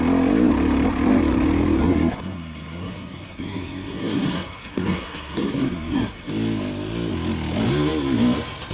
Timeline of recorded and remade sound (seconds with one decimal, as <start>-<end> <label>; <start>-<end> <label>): 0.0-1.8 recorded; 1.8-6.3 remade; 6.3-8.7 recorded